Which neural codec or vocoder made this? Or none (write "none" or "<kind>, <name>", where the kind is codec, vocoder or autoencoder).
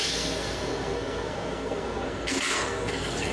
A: codec, SNAC